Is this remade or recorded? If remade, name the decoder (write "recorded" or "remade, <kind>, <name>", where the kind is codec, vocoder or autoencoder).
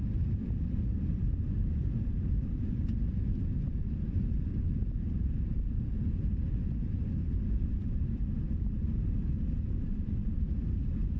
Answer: remade, vocoder, BigVGAN v2